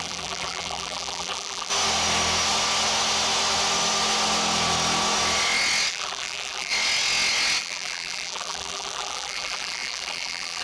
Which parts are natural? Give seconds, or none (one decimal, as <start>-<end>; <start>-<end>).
1.7-5.9; 6.7-7.6